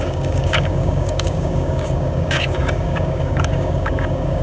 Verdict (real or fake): fake